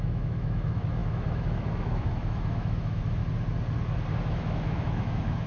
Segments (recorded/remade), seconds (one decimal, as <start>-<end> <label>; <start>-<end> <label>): 0.0-3.2 remade; 3.2-4.2 recorded; 4.2-5.5 remade